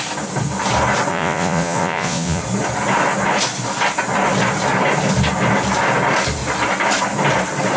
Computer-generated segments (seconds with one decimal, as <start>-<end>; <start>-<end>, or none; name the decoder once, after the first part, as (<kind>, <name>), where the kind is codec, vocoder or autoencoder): 1.1-2.4 (vocoder, Vocos)